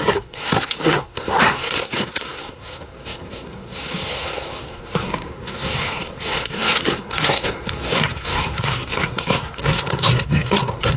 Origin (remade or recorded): remade